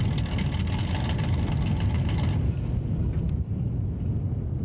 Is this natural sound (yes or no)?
yes